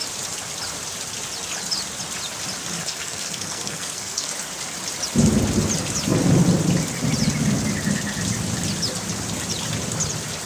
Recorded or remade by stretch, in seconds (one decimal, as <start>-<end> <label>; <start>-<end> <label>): 0.0-2.8 recorded; 2.8-4.3 remade; 4.3-10.5 recorded

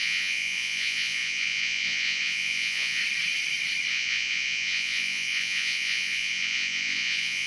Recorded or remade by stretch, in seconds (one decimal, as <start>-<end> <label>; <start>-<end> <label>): 0.0-3.0 remade; 3.0-3.9 recorded; 3.9-7.5 remade

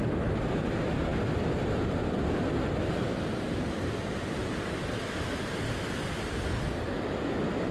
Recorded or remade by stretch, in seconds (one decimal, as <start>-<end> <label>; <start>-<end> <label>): 0.0-4.4 recorded; 4.4-4.9 remade; 4.9-7.7 recorded